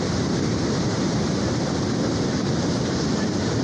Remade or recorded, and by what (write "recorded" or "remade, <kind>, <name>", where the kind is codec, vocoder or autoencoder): remade, vocoder, BigVGAN v2